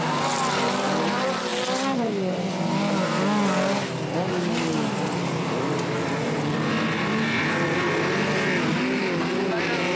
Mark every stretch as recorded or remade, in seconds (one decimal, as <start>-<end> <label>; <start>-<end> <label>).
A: 0.0-10.0 recorded